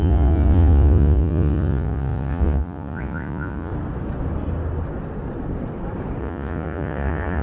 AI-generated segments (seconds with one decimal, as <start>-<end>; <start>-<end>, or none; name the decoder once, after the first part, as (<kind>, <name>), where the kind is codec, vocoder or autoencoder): 0.0-3.7 (vocoder, Vocos); 6.2-7.4

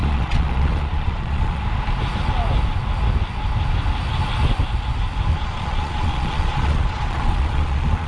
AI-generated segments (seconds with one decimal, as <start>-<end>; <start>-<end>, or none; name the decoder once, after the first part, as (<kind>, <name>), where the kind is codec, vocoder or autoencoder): 0.0-1.6 (vocoder, Vocos); 5.3-8.1